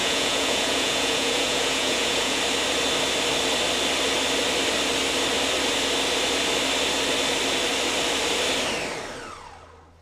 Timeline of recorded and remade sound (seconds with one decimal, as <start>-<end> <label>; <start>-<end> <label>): 0.0-2.4 remade; 2.4-10.0 recorded